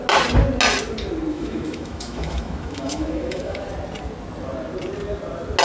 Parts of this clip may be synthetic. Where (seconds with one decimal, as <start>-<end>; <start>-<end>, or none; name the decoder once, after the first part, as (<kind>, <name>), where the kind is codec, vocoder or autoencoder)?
1.3-3.7 (autoencoder, DAC-VAE)